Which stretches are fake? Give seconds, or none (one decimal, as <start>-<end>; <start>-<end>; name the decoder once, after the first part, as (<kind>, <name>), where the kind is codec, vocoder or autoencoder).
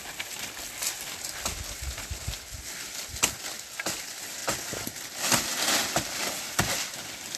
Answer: none